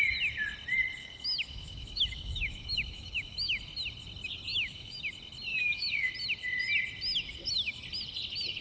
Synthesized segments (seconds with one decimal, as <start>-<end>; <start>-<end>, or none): 1.0-3.6; 4.5-5.0; 5.5-6.1